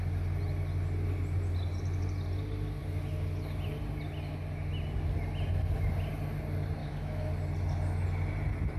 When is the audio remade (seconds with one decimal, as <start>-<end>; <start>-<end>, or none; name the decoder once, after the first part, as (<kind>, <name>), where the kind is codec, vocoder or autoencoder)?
6.8-7.3 (autoencoder, DAC-VAE)